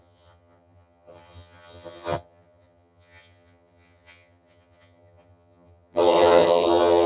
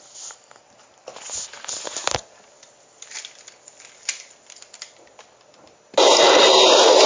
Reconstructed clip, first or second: first